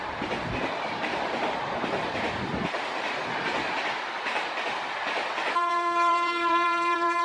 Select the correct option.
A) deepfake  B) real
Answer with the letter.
A